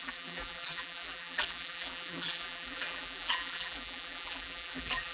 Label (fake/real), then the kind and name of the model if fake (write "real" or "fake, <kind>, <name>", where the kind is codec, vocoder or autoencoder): fake, vocoder, BigVGAN v2